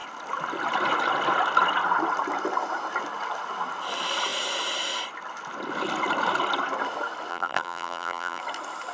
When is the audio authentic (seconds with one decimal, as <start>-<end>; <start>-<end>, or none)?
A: 0.0-7.3; 8.4-8.9